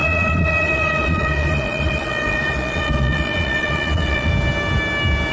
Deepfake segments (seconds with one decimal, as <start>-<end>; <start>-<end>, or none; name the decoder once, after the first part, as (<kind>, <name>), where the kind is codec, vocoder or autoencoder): 0.0-4.3 (vocoder, Vocos)